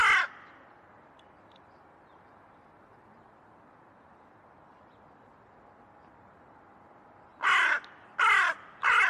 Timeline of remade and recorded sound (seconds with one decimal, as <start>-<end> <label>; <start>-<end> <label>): 0.0-9.1 recorded